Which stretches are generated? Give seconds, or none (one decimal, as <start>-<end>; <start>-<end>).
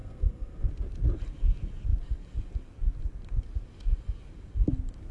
0.0-0.7